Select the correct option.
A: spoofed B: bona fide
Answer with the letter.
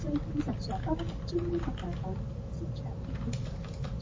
B